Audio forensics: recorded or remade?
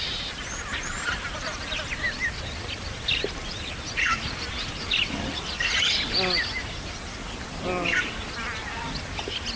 recorded